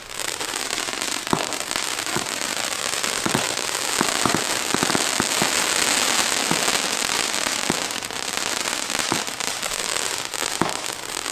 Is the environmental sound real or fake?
real